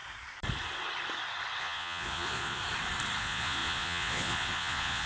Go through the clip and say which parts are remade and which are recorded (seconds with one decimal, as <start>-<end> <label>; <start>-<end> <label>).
0.0-1.6 recorded; 1.6-2.6 remade; 2.6-3.2 recorded; 3.2-5.1 remade

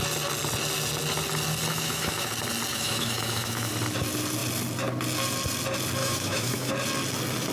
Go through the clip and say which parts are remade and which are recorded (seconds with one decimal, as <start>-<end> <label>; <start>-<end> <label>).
0.0-1.7 recorded; 1.7-2.3 remade; 2.3-2.7 recorded; 2.7-3.7 remade; 3.7-6.0 recorded; 6.0-6.7 remade; 6.7-7.5 recorded

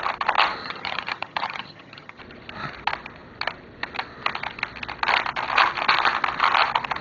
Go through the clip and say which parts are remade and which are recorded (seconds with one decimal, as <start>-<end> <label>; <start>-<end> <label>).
0.0-0.6 recorded; 0.6-2.2 remade; 2.2-7.0 recorded

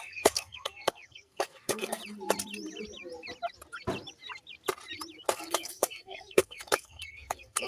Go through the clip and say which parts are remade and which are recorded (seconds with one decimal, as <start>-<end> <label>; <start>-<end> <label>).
0.0-2.0 remade; 2.0-5.3 recorded; 5.3-7.7 remade

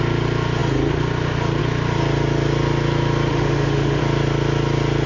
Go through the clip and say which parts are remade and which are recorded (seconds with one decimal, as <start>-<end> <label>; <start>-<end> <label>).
0.0-3.3 recorded; 3.3-4.0 remade; 4.0-5.1 recorded

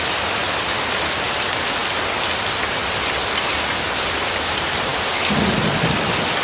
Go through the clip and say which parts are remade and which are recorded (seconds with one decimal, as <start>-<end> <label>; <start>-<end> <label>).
0.0-6.4 recorded